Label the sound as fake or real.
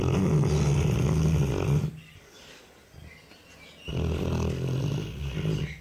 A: real